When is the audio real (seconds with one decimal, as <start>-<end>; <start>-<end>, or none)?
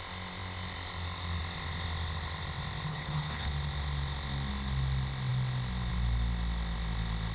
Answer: 0.0-2.9; 3.5-7.3